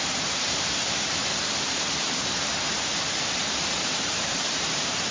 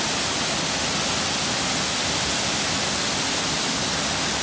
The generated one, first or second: first